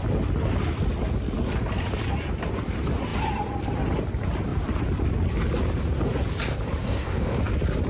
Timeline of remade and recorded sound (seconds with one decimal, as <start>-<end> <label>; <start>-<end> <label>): 0.0-6.8 recorded; 6.8-7.4 remade; 7.4-7.9 recorded